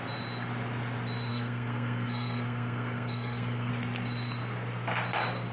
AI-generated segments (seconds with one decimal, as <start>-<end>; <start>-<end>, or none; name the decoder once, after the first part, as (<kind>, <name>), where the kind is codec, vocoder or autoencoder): 1.3-3.7 (codec, SNAC)